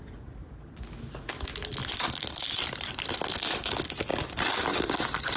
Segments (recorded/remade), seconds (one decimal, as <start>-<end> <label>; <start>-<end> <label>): 0.0-1.8 recorded; 1.8-3.1 remade; 3.1-4.1 recorded; 4.1-5.4 remade